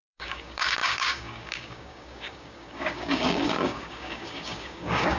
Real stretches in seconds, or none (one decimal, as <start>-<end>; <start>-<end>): none